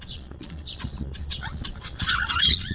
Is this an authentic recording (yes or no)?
no